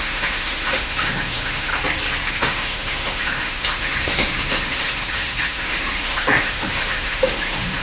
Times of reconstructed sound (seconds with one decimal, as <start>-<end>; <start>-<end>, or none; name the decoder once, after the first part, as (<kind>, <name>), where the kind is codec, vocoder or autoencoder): 0.0-1.7 (autoencoder, DAC-VAE); 2.3-7.8